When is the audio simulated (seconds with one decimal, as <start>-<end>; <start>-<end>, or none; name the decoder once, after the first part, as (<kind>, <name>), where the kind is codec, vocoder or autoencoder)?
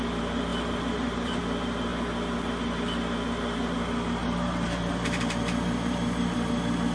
0.5-1.4 (vocoder, BigVGAN v2); 4.2-6.5